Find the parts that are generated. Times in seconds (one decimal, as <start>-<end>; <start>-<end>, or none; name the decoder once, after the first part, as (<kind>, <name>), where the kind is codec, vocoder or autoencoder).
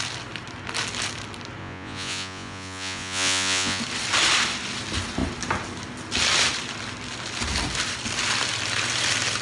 1.6-3.8 (vocoder, Vocos)